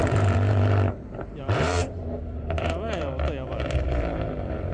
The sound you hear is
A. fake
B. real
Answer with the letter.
A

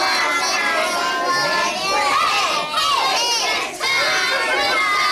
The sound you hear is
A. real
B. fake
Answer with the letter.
A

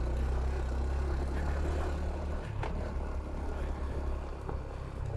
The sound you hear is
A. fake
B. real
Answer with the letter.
B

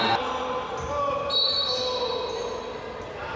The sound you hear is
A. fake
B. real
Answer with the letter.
B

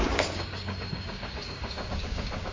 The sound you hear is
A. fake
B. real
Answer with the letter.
A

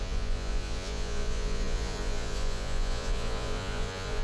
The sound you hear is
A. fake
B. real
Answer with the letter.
A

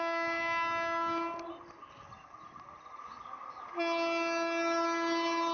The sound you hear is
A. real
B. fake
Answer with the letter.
A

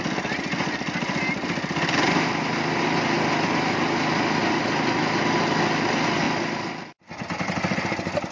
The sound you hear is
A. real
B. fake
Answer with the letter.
A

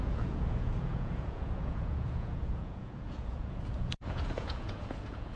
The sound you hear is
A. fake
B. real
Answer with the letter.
A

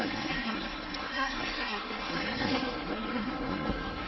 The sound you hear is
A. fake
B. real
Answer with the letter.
A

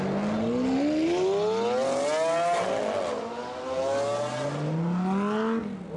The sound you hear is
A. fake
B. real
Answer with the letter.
B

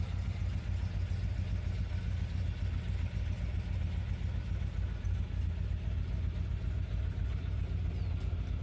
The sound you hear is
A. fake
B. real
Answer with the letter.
B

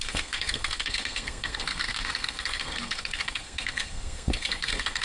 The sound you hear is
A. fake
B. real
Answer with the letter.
A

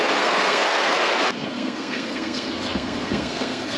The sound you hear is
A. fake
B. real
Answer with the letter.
A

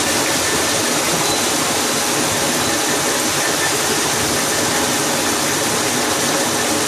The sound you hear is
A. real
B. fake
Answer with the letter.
A